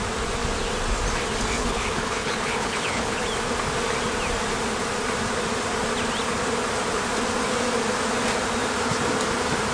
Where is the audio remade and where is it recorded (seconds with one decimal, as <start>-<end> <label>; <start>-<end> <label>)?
0.0-1.6 recorded; 1.6-3.2 remade; 3.2-9.7 recorded